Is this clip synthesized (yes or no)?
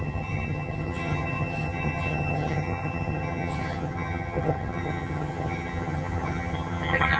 yes